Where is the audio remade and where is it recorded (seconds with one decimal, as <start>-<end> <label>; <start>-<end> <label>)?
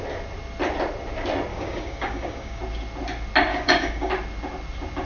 0.0-1.5 recorded; 1.5-2.6 remade; 2.6-3.5 recorded; 3.5-4.1 remade; 4.1-5.1 recorded